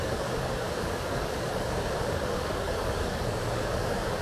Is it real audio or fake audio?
fake